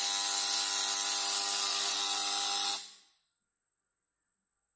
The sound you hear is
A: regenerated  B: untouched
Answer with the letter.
B